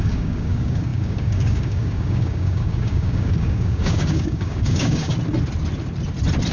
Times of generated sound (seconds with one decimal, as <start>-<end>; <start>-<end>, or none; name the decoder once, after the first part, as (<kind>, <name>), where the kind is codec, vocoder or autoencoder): 0.0-5.1 (codec, DAC)